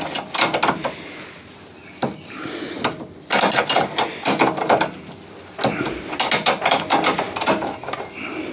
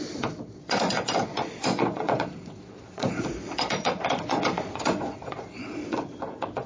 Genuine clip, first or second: first